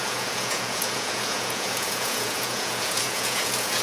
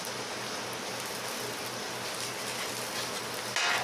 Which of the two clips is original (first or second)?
second